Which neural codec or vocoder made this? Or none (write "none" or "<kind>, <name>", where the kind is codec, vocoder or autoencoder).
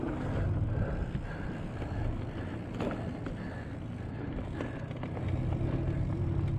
none